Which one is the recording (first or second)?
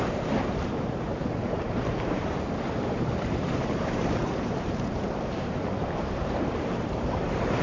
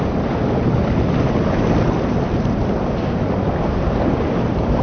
second